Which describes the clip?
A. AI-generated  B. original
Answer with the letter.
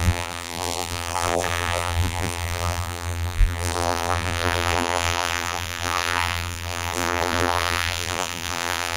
A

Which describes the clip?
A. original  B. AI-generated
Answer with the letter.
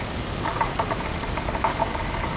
B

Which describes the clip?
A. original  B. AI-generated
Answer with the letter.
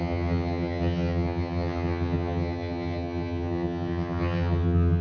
B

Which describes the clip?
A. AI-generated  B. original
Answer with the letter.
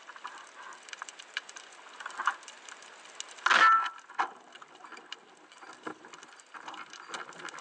B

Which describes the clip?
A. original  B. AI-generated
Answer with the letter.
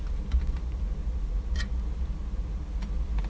A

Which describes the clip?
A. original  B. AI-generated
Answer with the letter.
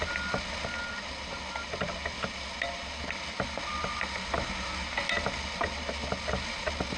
A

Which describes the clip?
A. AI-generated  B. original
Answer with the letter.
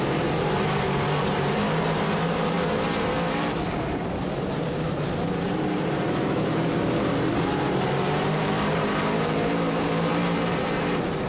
A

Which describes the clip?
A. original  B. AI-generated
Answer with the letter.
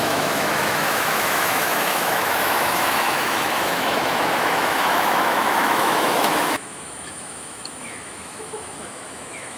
B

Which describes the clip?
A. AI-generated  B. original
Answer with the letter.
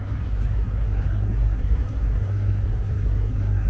A